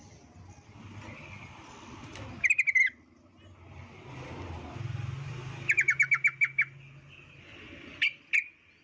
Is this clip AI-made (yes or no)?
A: no